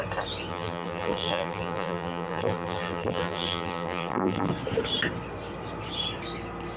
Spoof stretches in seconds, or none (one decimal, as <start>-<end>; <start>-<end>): 0.5-4.5